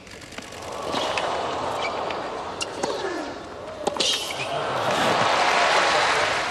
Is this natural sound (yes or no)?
yes